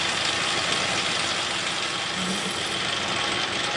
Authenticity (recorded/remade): recorded